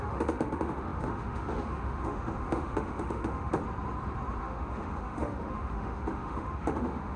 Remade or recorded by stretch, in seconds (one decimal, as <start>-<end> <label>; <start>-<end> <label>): 0.0-3.6 remade; 3.6-4.4 recorded; 4.4-7.2 remade